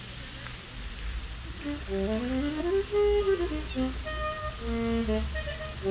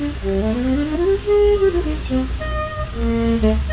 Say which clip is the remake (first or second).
second